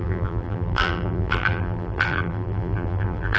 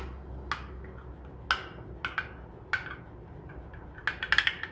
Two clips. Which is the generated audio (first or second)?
first